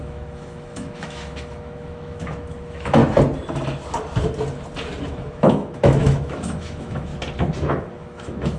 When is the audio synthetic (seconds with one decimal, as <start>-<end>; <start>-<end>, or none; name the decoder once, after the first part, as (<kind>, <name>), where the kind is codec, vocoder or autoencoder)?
0.0-3.0 (autoencoder, DAC-VAE); 5.1-7.1; 7.7-8.6